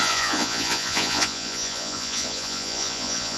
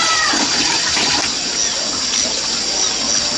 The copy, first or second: first